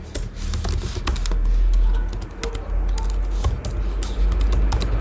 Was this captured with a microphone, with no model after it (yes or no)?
yes